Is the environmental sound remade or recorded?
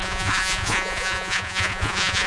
remade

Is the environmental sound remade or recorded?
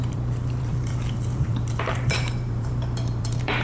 remade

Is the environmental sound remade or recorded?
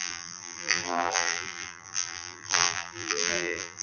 remade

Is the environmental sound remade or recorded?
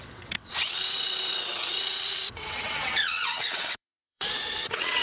remade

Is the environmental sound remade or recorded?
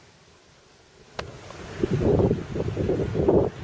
recorded